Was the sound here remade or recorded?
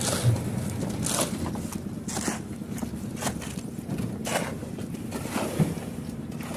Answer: recorded